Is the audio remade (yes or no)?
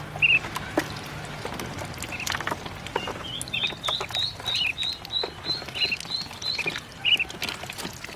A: no